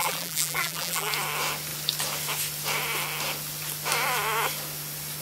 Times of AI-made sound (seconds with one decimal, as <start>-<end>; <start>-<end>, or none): 0.0-1.1